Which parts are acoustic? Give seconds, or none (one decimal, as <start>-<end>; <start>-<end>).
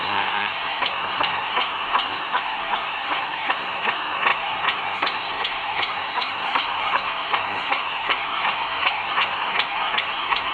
none